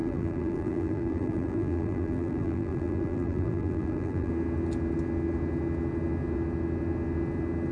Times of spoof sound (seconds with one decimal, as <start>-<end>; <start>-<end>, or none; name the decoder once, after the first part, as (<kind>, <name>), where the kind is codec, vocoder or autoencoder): 0.0-4.3 (vocoder, BigVGAN v2)